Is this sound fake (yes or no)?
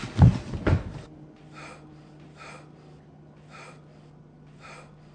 no